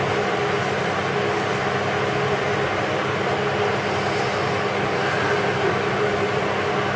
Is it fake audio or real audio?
real